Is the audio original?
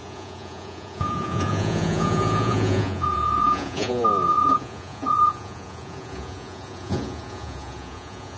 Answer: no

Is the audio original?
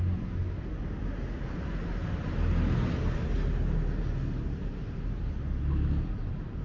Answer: yes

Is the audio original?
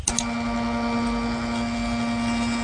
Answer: yes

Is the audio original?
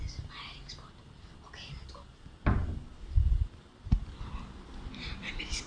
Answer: yes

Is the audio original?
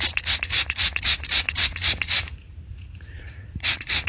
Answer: no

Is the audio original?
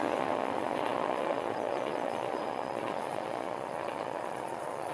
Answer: no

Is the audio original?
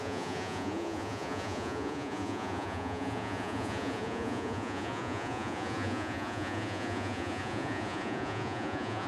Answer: no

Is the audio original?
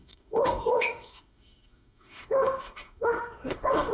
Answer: no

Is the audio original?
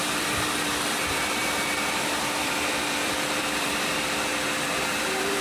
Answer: no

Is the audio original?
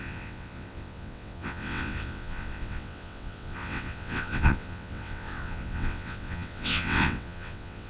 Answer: no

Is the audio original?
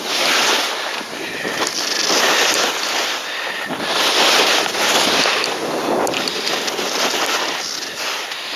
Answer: yes